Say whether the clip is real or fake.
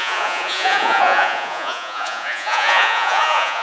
fake